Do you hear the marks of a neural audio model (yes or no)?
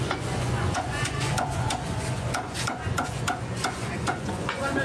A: yes